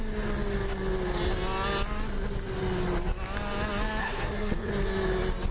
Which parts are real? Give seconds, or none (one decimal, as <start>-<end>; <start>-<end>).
0.0-4.0; 4.7-5.5

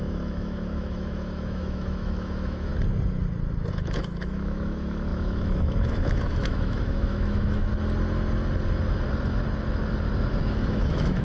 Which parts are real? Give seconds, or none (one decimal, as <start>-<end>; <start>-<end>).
2.7-3.7; 7.7-10.5

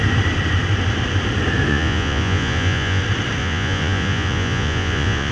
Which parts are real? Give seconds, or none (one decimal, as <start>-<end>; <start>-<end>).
0.0-1.7; 3.0-3.4

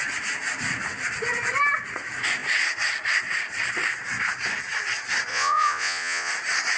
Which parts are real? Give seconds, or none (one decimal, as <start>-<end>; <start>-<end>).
0.0-5.3; 6.3-6.8

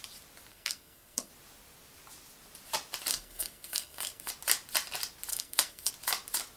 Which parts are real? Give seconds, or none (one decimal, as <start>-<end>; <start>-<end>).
0.0-0.5; 1.3-3.1; 4.3-5.3; 5.9-6.6

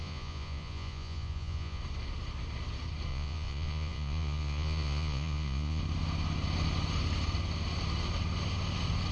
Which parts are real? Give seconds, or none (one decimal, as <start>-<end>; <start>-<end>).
1.8-3.1; 5.8-9.1

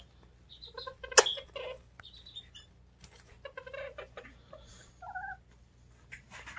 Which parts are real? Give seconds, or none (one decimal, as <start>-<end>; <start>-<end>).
0.0-6.6